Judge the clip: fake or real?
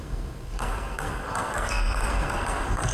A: fake